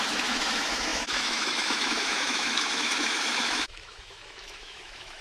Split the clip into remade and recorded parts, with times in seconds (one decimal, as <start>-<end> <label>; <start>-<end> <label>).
0.0-5.2 remade